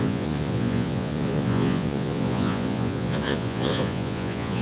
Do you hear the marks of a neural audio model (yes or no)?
yes